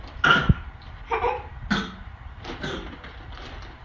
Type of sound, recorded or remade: recorded